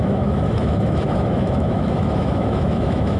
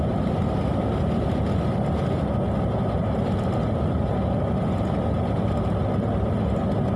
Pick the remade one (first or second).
first